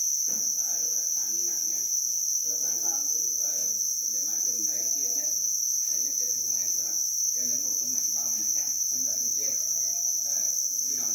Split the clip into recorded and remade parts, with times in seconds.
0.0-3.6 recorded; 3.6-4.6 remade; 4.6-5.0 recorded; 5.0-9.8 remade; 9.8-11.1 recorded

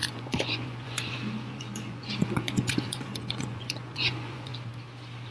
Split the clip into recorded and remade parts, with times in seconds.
0.0-4.5 remade; 4.5-5.3 recorded

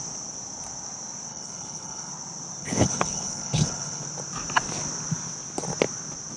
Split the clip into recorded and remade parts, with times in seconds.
0.0-1.3 recorded; 1.3-2.1 remade; 2.1-2.6 recorded; 2.6-4.0 remade; 4.0-6.4 recorded